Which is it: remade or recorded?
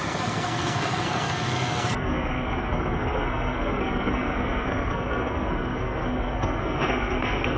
remade